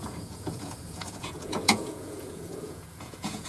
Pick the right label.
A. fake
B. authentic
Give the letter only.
A